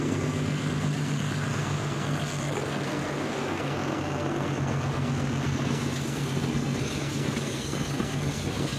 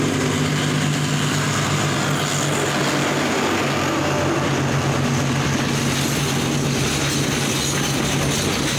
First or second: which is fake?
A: first